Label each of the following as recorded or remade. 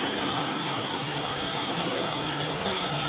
remade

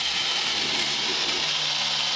recorded